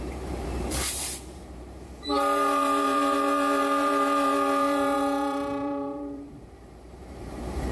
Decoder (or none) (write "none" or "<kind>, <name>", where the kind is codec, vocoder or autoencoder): vocoder, BigVGAN v2